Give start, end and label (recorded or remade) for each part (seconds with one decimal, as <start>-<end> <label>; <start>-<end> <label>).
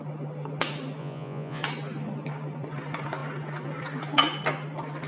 0.0-1.0 recorded; 1.0-1.6 remade; 1.6-5.1 recorded